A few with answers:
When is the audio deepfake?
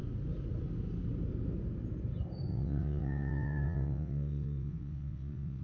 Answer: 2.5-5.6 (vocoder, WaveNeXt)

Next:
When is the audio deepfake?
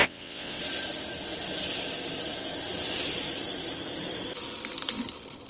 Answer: 0.0-0.6 (vocoder, WaveNeXt)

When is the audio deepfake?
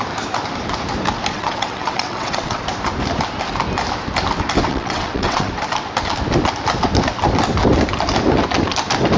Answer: 1.3-2.6 (vocoder, WaveNeXt); 4.7-5.5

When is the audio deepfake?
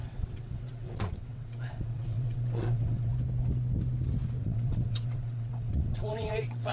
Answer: 0.0-3.1 (vocoder, WaveNeXt); 4.4-6.7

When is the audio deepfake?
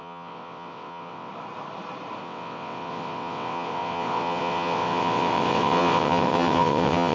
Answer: 0.0-1.3 (vocoder, WaveNeXt); 2.2-7.1